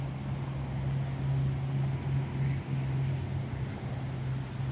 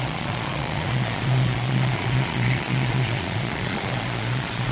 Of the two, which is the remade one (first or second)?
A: second